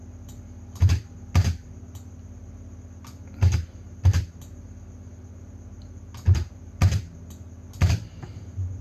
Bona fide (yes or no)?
yes